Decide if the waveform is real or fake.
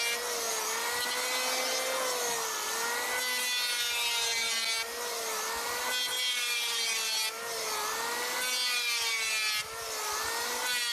real